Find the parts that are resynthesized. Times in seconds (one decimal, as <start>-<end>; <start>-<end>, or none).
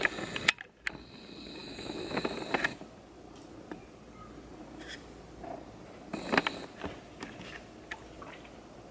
1.6-2.2